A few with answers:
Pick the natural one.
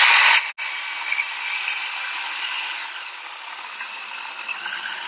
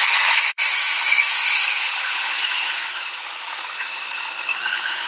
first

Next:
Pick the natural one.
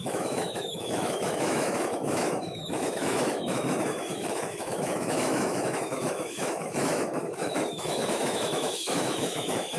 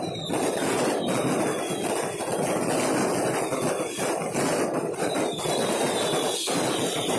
second